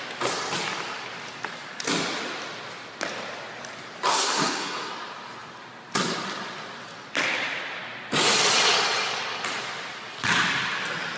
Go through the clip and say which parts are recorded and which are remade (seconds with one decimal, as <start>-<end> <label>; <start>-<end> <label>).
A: 0.0-4.1 recorded; 4.1-4.9 remade; 4.9-11.2 recorded